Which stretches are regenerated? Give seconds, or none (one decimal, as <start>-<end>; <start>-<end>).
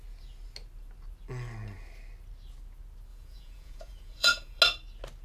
3.1-4.6